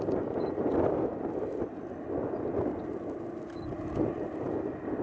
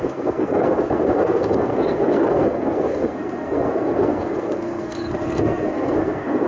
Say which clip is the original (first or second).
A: first